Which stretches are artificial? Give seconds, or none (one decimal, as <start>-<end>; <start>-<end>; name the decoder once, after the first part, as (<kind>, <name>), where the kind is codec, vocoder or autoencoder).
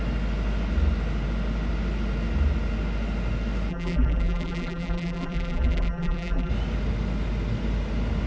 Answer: 3.7-6.5 (vocoder, BigVGAN v2)